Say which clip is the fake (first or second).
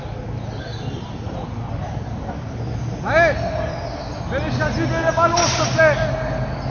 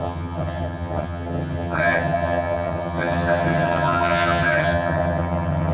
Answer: second